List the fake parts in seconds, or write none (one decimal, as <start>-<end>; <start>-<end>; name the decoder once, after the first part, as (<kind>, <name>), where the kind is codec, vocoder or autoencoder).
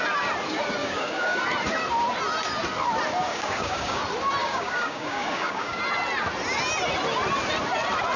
0.8-1.4 (codec, DAC); 3.2-4.0; 4.4-5.8